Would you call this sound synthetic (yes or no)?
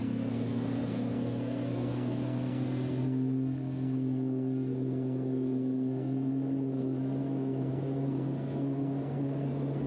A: yes